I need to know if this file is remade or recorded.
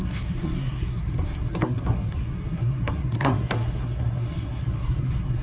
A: remade